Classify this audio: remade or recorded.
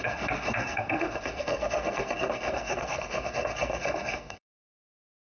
remade